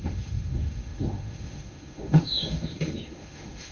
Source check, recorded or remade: remade